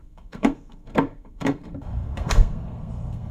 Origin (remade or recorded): remade